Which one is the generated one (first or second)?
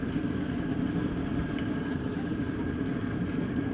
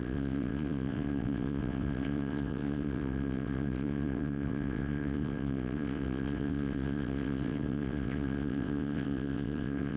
second